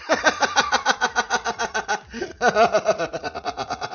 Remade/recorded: remade